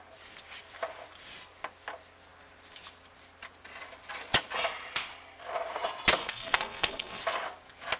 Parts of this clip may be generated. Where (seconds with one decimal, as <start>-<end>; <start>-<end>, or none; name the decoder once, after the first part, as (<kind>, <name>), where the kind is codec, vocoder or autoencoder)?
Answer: 6.2-7.2 (codec, SNAC)